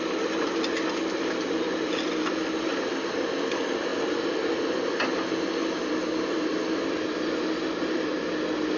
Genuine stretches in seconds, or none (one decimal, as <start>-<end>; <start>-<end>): 0.0-8.8